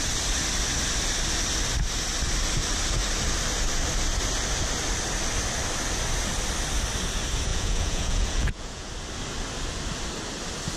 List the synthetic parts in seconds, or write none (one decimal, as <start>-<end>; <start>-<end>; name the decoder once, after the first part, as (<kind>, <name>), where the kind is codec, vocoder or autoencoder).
7.5-8.9 (vocoder, Vocos)